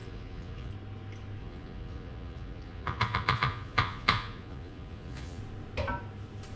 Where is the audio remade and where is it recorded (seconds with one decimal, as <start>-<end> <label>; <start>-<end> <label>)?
0.0-0.7 remade; 0.7-1.4 recorded; 1.4-5.4 remade; 5.4-6.6 recorded